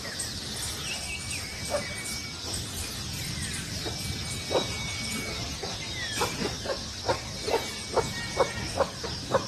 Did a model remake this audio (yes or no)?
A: no